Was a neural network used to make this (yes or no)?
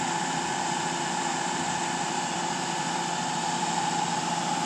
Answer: yes